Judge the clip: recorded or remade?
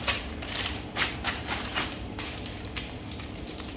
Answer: remade